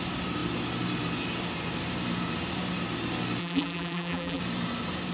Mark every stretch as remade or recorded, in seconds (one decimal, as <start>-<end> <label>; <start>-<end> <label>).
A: 0.0-3.4 recorded; 3.4-4.4 remade; 4.4-5.1 recorded